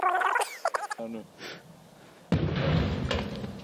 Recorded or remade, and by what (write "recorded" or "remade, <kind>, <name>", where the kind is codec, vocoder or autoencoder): recorded